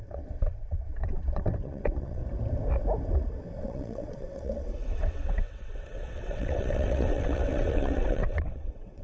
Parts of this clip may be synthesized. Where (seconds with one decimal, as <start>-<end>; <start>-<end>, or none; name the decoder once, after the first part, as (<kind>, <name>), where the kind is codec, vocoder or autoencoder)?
0.0-2.2 (vocoder, WaveNeXt); 3.6-9.0